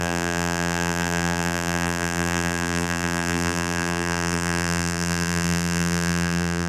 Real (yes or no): no